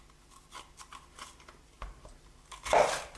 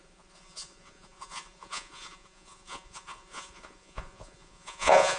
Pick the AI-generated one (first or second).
second